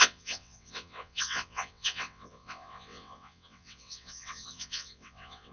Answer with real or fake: fake